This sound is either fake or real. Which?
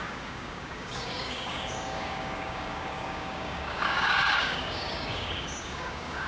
fake